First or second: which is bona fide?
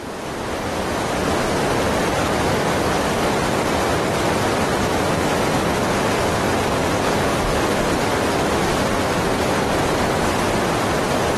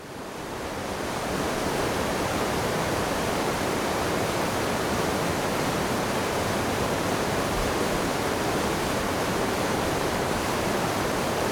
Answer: first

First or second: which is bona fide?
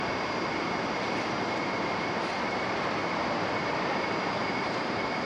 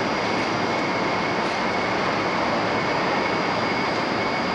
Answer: second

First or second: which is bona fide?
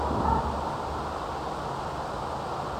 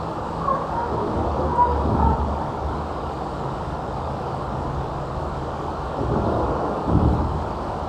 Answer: first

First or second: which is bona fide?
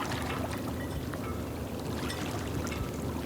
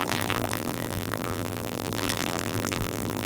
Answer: first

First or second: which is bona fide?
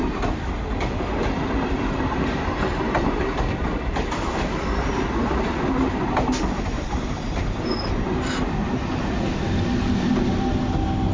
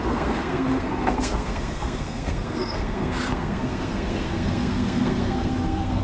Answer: first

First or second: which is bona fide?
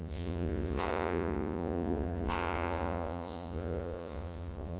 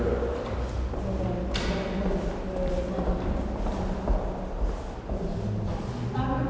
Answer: second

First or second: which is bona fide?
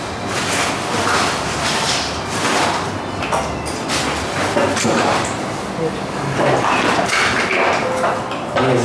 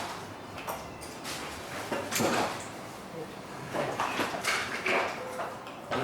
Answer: first